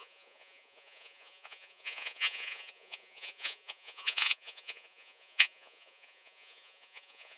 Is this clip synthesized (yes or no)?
yes